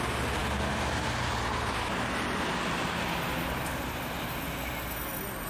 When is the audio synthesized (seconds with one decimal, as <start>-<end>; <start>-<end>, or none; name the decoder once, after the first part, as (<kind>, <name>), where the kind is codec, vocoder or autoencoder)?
none